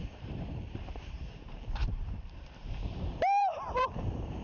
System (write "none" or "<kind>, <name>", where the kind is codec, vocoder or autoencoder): vocoder, BigVGAN v2